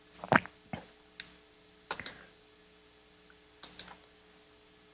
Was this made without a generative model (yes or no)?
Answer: yes